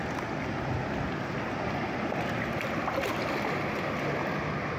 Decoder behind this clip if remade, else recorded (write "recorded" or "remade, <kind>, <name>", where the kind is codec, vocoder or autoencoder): recorded